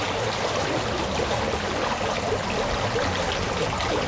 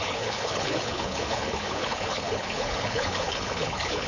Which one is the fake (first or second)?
second